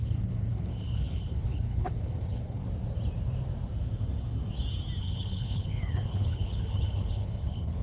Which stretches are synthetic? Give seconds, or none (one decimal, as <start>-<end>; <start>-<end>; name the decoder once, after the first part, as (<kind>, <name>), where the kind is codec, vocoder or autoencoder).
0.0-2.6 (codec, HILCodec); 5.0-7.8